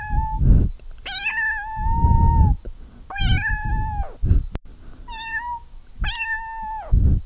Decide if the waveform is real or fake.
real